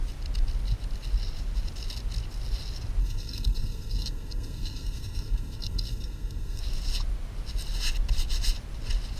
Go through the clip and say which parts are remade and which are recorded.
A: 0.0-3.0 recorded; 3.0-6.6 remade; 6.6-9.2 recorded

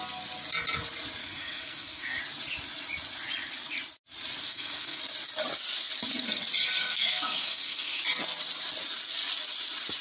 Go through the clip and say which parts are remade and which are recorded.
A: 0.0-1.2 recorded; 1.2-2.2 remade; 2.2-4.4 recorded; 4.4-5.0 remade; 5.0-6.8 recorded; 6.8-8.0 remade; 8.0-10.0 recorded

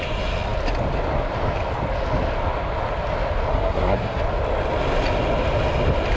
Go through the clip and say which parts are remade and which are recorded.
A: 0.0-3.5 recorded; 3.5-4.2 remade; 4.2-6.2 recorded

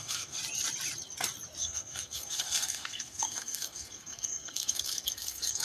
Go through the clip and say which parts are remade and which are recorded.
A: 0.0-0.4 remade; 0.4-1.6 recorded; 1.6-5.6 remade

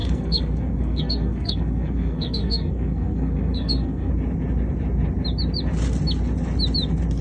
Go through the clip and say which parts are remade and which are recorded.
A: 0.0-4.1 remade; 4.1-7.2 recorded

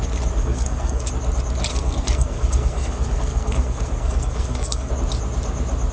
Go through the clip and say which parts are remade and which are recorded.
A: 0.0-0.4 recorded; 0.4-1.1 remade; 1.1-1.7 recorded; 1.7-4.9 remade; 4.9-5.9 recorded

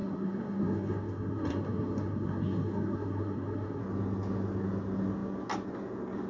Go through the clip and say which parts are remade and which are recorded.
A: 0.0-3.8 remade; 3.8-6.3 recorded